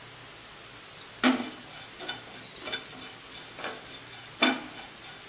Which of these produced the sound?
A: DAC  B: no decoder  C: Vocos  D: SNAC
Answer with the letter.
B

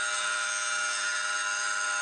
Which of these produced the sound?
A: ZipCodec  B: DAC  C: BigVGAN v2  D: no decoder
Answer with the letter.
D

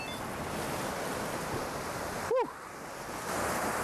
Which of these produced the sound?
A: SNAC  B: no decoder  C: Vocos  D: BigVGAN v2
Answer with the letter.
B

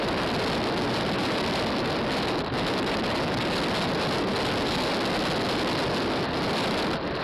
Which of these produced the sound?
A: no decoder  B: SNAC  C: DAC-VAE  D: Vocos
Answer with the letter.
A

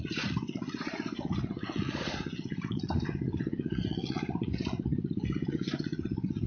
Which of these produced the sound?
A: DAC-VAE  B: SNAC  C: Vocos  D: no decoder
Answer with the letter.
C